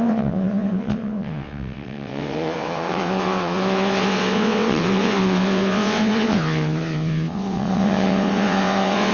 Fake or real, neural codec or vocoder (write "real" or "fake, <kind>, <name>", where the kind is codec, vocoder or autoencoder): fake, vocoder, WaveNeXt